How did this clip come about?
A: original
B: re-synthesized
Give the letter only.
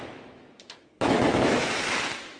B